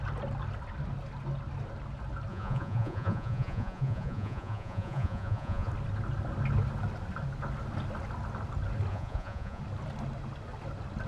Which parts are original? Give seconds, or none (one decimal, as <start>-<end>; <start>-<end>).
0.0-2.3; 5.7-8.9; 9.6-11.1